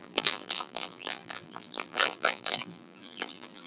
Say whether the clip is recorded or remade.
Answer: remade